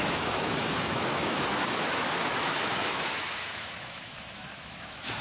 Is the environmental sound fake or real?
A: fake